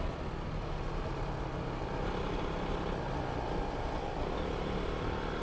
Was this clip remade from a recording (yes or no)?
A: no